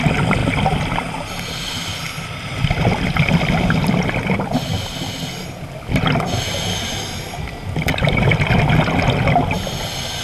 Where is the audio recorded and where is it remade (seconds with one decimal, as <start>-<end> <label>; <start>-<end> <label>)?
0.0-10.2 recorded